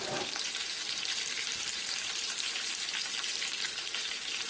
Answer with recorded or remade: remade